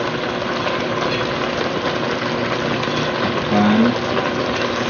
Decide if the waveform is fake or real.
real